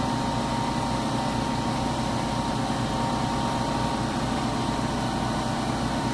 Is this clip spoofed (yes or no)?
no